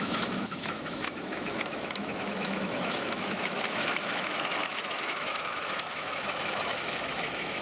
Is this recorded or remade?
remade